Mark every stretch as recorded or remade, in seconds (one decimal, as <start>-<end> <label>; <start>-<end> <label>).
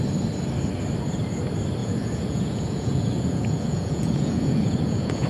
0.0-1.8 recorded; 1.8-5.3 remade